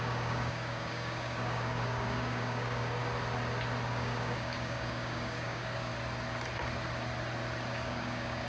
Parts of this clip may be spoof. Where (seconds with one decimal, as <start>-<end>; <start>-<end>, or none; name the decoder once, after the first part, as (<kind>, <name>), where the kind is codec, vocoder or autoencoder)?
0.0-3.0 (codec, DAC); 3.9-5.9; 7.7-8.5